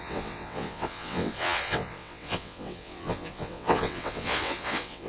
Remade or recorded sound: remade